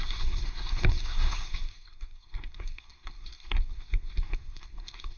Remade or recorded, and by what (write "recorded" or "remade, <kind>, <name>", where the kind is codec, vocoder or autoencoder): remade, codec, SNAC